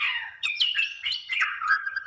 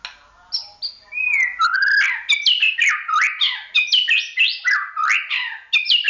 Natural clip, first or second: second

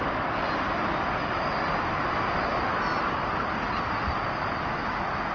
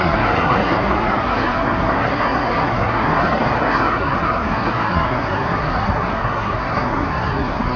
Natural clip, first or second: first